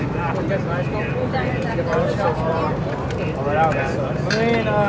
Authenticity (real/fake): real